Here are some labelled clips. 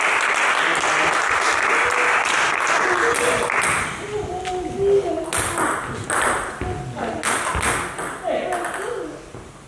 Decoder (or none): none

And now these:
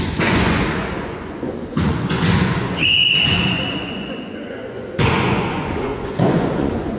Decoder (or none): vocoder, Vocos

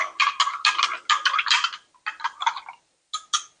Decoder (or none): none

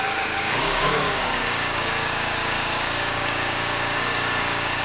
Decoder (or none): codec, DAC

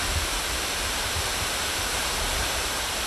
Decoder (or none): vocoder, BigVGAN v2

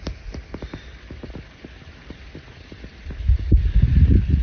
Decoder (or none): none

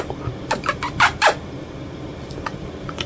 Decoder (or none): none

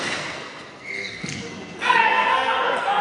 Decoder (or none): codec, SNAC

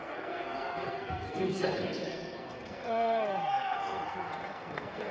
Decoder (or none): codec, SNAC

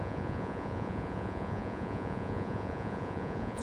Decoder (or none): vocoder, Vocos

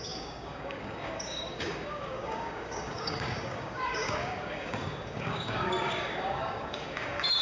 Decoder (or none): codec, DAC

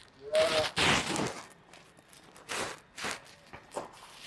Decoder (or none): none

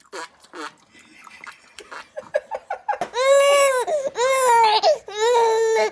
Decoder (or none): none